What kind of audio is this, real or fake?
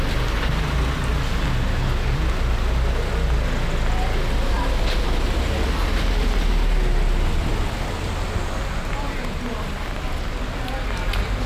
real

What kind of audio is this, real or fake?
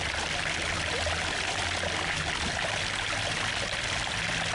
real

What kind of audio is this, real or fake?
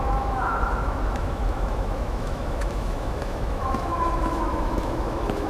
fake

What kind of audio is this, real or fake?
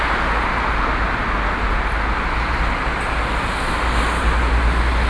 real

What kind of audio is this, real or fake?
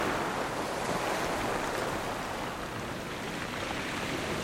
real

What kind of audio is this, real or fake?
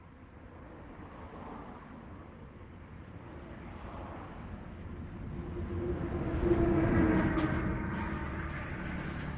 real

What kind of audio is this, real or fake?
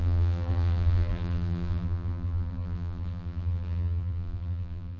fake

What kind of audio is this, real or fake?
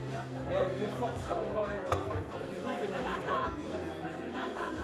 fake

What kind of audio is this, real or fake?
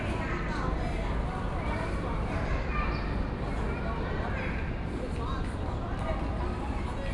real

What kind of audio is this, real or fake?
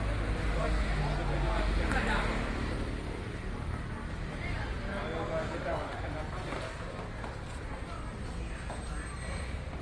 real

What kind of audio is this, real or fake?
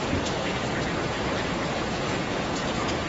fake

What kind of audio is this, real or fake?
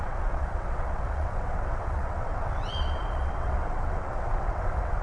fake